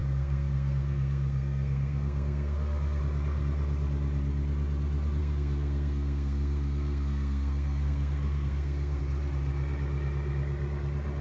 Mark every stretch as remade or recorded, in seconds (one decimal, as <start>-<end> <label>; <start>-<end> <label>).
0.0-3.0 remade; 3.0-5.2 recorded; 5.2-9.0 remade; 9.0-11.2 recorded